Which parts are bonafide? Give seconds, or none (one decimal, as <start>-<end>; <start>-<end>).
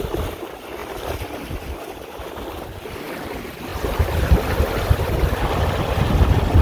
0.0-0.8; 2.3-6.6